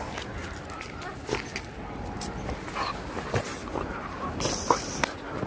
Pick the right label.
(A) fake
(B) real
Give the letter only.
B